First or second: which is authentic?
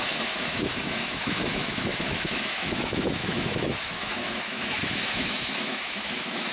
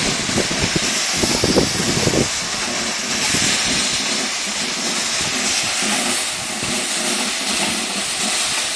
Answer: second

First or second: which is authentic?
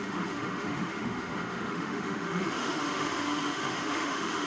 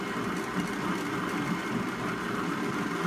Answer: second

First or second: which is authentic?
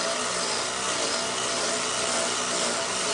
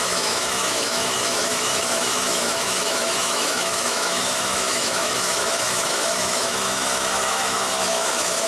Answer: first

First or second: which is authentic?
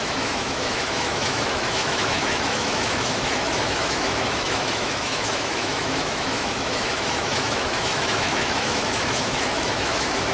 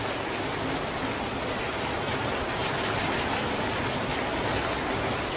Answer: second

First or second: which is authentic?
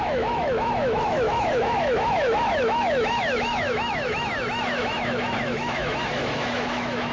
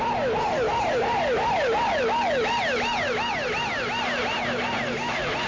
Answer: second